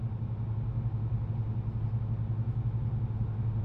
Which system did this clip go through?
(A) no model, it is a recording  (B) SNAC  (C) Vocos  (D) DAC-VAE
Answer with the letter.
A